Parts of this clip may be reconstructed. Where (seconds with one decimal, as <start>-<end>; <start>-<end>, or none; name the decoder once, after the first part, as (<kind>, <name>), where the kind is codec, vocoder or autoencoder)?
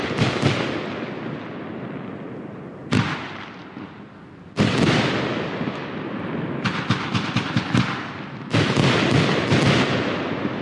none